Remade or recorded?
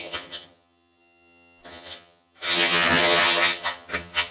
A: remade